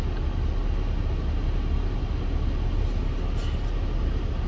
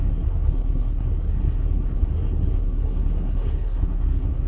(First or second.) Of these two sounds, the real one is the first